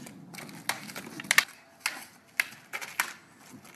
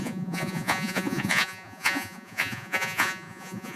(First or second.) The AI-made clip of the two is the second